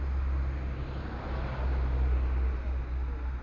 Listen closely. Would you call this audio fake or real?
real